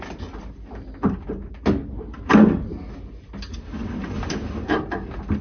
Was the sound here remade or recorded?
recorded